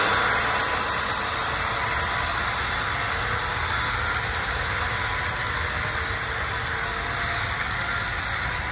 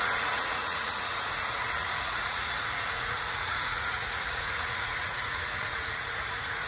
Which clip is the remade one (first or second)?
second